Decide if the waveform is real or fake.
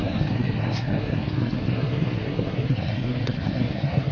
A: fake